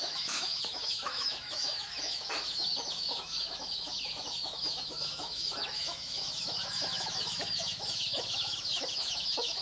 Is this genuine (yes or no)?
no